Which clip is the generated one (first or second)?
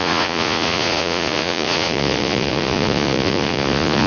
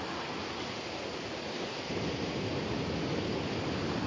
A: first